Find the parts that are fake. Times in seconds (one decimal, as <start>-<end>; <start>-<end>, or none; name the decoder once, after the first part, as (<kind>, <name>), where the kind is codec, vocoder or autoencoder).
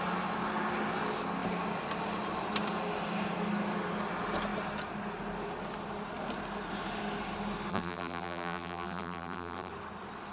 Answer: 7.7-9.7 (vocoder, BigVGAN v2)